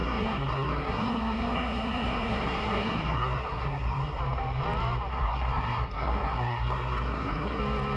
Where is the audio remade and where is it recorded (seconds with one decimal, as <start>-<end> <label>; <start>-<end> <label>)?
0.0-4.2 remade; 4.2-5.1 recorded; 5.1-7.6 remade; 7.6-8.0 recorded